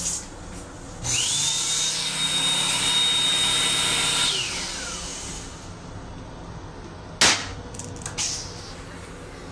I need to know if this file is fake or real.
real